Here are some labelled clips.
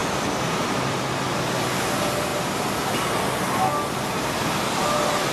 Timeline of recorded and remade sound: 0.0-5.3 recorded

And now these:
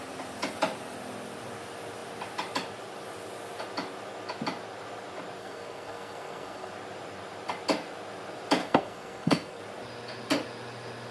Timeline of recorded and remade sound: 0.0-5.4 recorded; 5.4-6.7 remade; 6.7-8.6 recorded; 8.6-9.6 remade; 9.6-11.1 recorded

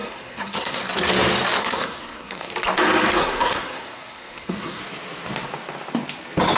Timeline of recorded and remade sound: 0.0-0.8 remade; 0.8-1.6 recorded; 1.6-2.5 remade; 2.5-3.2 recorded; 3.2-4.8 remade; 4.8-6.6 recorded

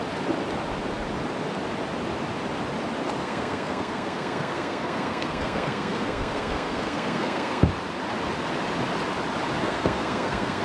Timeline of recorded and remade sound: 0.0-3.2 recorded; 3.2-7.7 remade; 7.7-9.6 recorded; 9.6-10.6 remade

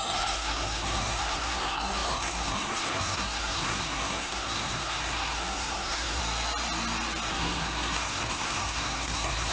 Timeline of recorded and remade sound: 0.0-6.2 remade; 6.2-7.3 recorded; 7.3-9.5 remade

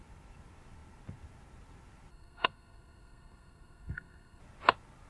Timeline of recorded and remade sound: 0.0-2.1 recorded; 2.1-4.4 remade; 4.4-5.1 recorded

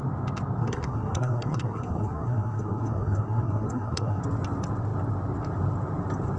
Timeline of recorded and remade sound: 0.0-0.6 recorded; 0.6-4.2 remade; 4.2-6.4 recorded